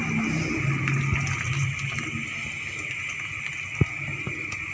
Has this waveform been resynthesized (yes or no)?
no